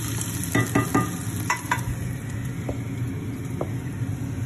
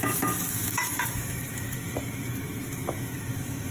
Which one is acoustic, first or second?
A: first